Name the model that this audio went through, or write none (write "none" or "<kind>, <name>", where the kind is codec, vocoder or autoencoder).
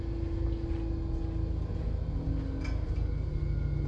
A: none